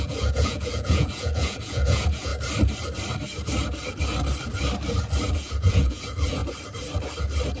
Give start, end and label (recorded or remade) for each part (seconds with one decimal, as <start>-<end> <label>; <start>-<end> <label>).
0.0-2.3 remade; 2.3-5.3 recorded; 5.3-6.4 remade; 6.4-7.6 recorded